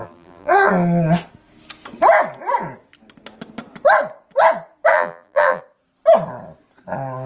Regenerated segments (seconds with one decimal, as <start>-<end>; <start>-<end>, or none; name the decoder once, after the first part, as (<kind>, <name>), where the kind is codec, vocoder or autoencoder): 0.0-0.7 (vocoder, BigVGAN v2); 4.9-5.6